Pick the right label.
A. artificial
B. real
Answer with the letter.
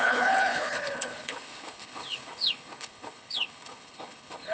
A